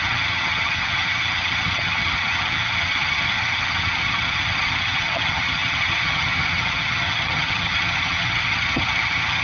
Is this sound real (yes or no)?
no